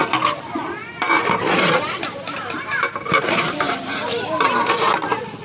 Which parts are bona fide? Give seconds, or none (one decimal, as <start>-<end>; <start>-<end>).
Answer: 0.0-0.8; 4.0-5.4